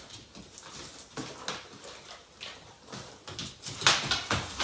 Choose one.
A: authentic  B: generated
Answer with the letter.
A